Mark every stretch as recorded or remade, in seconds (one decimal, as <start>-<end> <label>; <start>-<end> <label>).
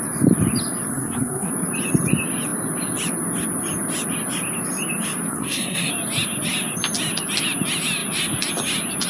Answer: 0.0-0.9 recorded; 0.9-1.5 remade; 1.5-5.3 recorded; 5.3-5.9 remade; 5.9-9.1 recorded